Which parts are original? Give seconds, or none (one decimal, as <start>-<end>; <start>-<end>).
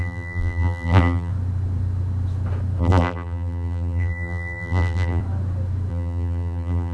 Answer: 1.3-2.8; 5.2-5.9